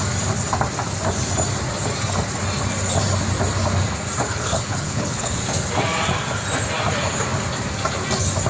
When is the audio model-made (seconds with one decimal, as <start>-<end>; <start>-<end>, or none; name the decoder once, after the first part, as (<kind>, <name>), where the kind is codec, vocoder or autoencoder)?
4.3-5.4 (codec, HILCodec)